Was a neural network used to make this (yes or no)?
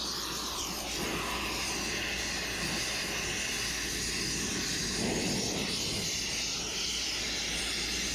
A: no